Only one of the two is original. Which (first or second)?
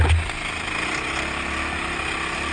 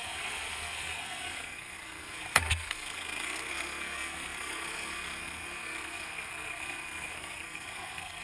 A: first